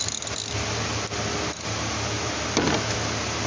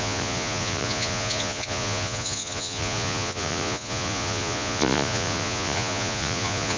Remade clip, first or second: second